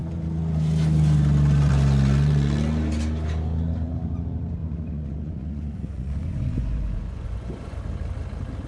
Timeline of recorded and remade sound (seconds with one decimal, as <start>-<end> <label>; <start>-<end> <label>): 0.0-4.6 recorded; 4.6-7.8 remade; 7.8-8.7 recorded